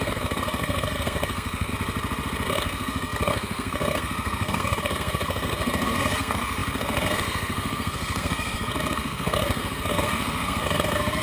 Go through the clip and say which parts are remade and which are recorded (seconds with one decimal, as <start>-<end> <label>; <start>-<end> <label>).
0.0-1.7 remade; 1.7-2.5 recorded; 2.5-11.2 remade